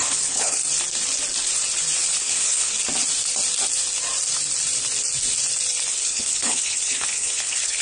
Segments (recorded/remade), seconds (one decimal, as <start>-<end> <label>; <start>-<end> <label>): 0.0-0.6 remade; 0.6-2.2 recorded; 2.2-2.7 remade; 2.7-5.9 recorded; 5.9-7.8 remade